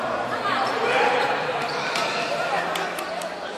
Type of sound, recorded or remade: remade